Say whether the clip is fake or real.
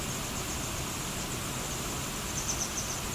real